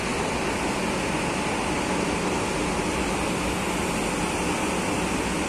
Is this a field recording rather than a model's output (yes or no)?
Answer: yes